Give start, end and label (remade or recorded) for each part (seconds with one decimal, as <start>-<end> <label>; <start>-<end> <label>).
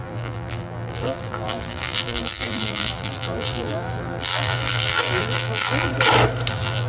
0.0-5.9 remade; 5.9-6.5 recorded; 6.5-6.9 remade